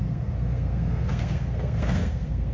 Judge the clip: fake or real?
fake